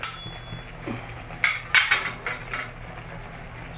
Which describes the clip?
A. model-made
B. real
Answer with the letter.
B